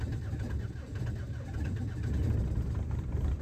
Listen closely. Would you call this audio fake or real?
real